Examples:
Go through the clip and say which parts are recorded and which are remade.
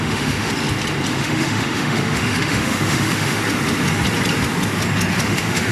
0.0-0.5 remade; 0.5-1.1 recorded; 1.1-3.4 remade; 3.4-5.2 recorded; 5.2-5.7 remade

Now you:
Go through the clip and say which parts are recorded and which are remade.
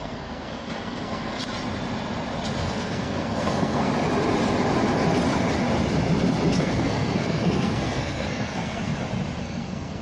0.0-1.4 remade; 1.4-2.6 recorded; 2.6-3.9 remade; 3.9-6.6 recorded; 6.6-8.9 remade; 8.9-9.4 recorded; 9.4-10.0 remade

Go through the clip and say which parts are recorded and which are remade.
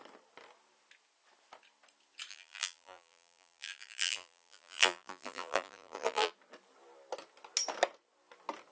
0.0-2.3 recorded; 2.3-6.3 remade; 6.3-8.7 recorded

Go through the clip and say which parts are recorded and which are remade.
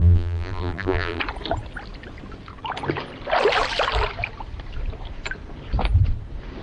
0.0-1.2 remade; 1.2-6.6 recorded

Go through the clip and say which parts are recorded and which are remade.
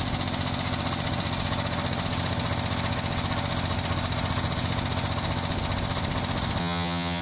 0.0-6.6 recorded; 6.6-7.2 remade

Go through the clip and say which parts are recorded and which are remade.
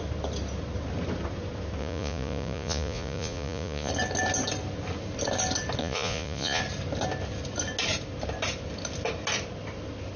0.0-1.8 recorded; 1.8-3.9 remade; 3.9-5.8 recorded; 5.8-6.6 remade; 6.6-10.2 recorded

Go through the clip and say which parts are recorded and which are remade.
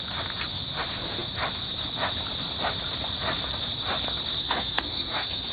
0.0-4.4 recorded; 4.4-5.5 remade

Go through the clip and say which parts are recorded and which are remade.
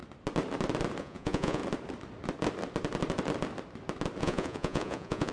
0.0-1.0 recorded; 1.0-1.6 remade; 1.6-4.2 recorded; 4.2-5.3 remade